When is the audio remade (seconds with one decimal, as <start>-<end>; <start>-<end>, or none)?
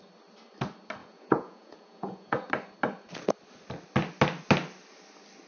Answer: 1.0-2.5